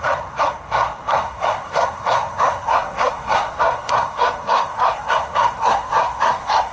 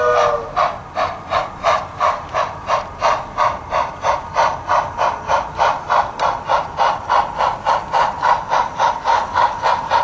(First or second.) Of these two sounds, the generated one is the first